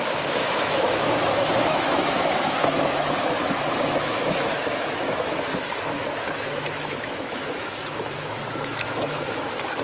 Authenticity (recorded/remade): remade